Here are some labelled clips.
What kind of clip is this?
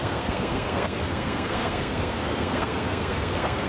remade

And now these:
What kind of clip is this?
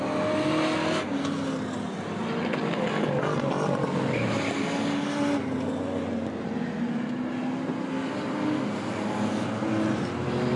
recorded